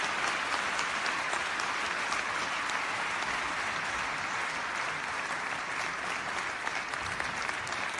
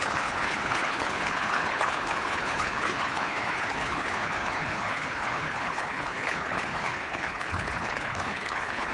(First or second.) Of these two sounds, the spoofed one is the second